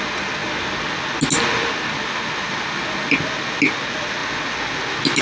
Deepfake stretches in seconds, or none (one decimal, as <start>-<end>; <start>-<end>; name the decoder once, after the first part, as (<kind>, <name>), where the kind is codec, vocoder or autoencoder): none